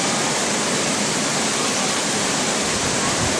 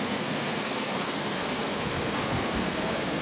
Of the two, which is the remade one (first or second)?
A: second